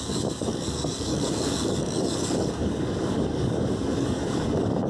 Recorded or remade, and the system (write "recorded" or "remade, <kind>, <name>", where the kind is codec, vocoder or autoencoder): remade, codec, DAC